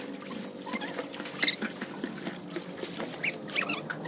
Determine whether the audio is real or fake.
real